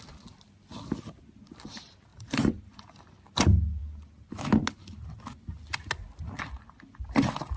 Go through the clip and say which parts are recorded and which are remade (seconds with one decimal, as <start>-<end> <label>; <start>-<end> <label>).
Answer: 0.0-2.1 recorded; 2.1-3.2 remade; 3.2-7.6 recorded